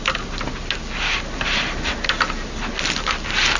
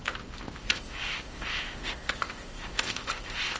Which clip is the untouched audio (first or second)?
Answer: first